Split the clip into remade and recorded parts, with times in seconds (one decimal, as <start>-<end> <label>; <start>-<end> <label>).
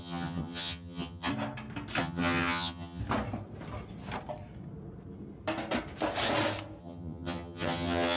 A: 0.0-1.3 remade; 1.3-2.0 recorded; 2.0-3.0 remade; 3.0-6.8 recorded; 6.8-8.2 remade